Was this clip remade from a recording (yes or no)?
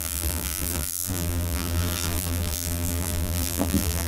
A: yes